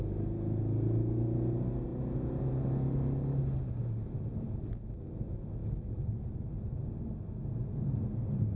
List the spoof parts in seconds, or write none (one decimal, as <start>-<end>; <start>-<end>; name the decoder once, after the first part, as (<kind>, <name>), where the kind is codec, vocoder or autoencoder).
none